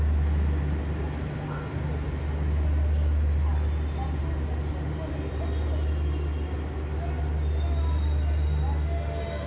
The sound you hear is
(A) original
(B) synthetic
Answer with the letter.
A